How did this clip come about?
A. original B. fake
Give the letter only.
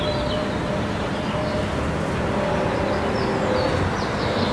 A